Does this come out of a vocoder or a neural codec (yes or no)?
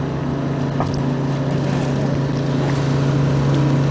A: no